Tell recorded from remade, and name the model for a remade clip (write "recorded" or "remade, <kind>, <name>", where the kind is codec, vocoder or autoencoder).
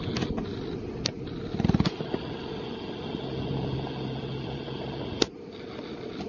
recorded